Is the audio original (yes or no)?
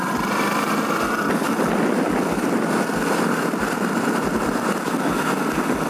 yes